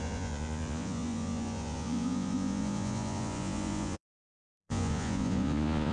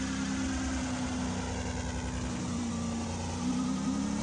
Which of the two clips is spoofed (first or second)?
first